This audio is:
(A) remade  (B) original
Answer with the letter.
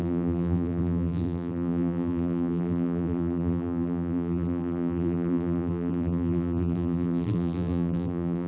A